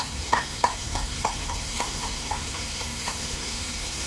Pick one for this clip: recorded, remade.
remade